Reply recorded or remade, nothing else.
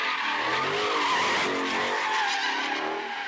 recorded